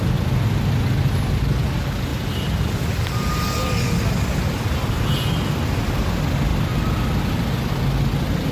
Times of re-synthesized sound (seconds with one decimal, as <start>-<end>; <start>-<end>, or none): 2.1-2.9; 6.5-7.2